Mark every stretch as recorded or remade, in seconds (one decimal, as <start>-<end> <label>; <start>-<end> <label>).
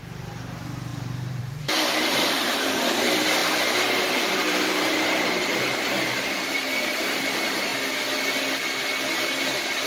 0.0-7.7 remade; 7.7-8.8 recorded; 8.8-9.9 remade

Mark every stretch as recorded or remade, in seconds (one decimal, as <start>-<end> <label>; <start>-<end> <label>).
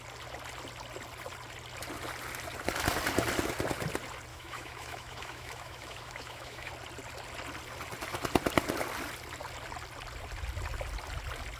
0.0-4.3 recorded; 4.3-6.7 remade; 6.7-11.6 recorded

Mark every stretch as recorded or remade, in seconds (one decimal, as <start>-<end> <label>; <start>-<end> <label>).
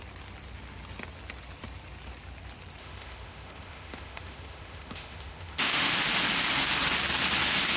0.0-2.8 recorded; 2.8-5.9 remade; 5.9-7.8 recorded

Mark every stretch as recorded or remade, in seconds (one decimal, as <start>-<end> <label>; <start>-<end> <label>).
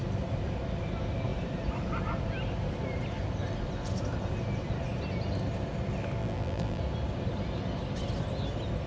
0.0-6.2 recorded; 6.2-6.8 remade; 6.8-8.9 recorded